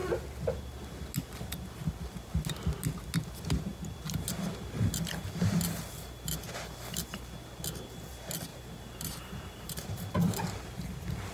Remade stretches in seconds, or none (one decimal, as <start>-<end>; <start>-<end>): 8.5-9.9